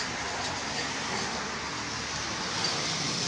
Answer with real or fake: fake